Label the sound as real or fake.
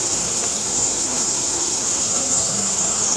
fake